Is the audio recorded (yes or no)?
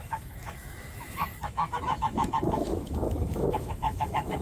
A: no